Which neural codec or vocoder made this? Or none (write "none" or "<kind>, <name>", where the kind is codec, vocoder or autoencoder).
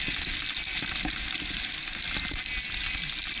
none